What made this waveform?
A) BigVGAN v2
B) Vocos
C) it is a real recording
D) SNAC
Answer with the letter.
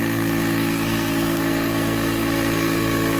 D